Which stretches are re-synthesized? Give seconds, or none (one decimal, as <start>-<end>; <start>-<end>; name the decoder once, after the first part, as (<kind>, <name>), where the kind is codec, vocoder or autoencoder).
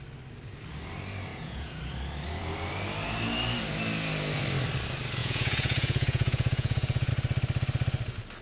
1.3-1.8 (vocoder, Vocos); 5.2-7.1